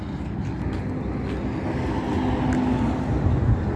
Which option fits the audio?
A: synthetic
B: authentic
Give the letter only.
B